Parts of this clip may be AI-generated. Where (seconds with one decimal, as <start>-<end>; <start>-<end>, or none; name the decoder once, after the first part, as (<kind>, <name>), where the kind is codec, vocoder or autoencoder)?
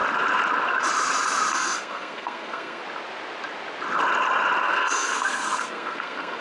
1.5-2.8 (codec, SNAC); 4.6-6.4